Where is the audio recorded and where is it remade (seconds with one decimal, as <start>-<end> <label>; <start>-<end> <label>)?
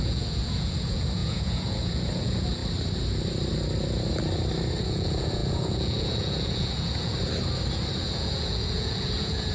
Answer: 0.0-2.6 remade; 2.6-4.8 recorded; 4.8-7.1 remade; 7.1-8.0 recorded; 8.0-9.5 remade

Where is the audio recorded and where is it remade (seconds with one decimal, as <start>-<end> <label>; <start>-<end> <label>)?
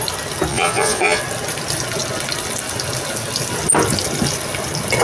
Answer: 0.0-0.5 recorded; 0.5-1.2 remade; 1.2-5.0 recorded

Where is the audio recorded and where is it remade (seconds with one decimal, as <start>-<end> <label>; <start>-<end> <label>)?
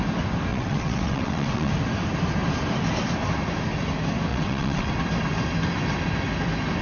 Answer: 0.0-0.5 recorded; 0.5-1.7 remade; 1.7-4.3 recorded; 4.3-4.9 remade; 4.9-6.8 recorded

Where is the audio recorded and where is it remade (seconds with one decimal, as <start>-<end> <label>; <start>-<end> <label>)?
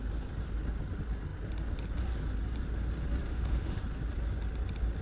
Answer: 0.0-3.3 recorded; 3.3-3.8 remade; 3.8-5.0 recorded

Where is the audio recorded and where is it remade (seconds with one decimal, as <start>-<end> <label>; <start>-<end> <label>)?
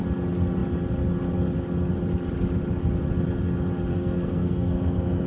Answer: 0.0-3.9 recorded; 3.9-5.3 remade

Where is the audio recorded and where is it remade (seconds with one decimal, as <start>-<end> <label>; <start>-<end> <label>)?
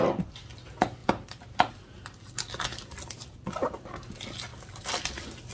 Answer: 0.0-1.0 recorded; 1.0-1.7 remade; 1.7-3.6 recorded; 3.6-4.1 remade; 4.1-5.5 recorded